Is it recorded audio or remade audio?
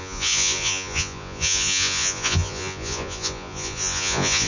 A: remade